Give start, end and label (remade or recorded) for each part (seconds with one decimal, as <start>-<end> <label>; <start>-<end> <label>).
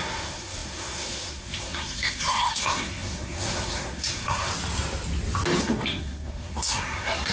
0.0-4.5 remade; 4.5-5.6 recorded; 5.6-7.3 remade